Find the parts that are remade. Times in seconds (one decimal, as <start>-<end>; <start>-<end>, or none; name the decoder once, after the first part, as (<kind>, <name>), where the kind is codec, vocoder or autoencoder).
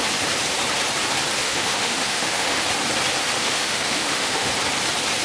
1.4-2.6 (autoencoder, DAC-VAE); 3.4-4.5